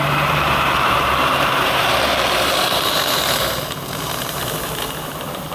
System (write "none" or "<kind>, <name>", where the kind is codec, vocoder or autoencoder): vocoder, BigVGAN v2